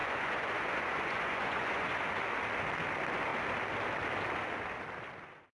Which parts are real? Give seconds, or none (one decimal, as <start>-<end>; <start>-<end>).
2.0-5.5